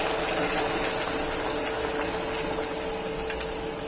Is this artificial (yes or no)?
no